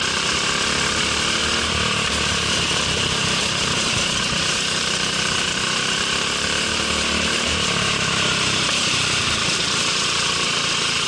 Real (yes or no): no